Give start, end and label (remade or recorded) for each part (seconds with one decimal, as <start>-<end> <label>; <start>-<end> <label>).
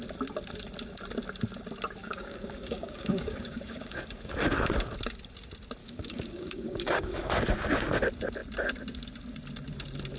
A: 0.0-2.0 recorded; 2.0-4.3 remade; 4.3-5.8 recorded; 5.8-7.3 remade; 7.3-10.2 recorded